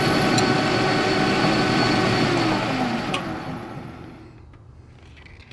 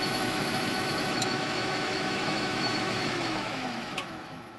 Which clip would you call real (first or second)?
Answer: first